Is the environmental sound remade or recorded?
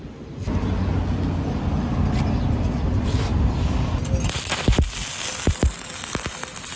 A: recorded